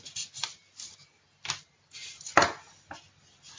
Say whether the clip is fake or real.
real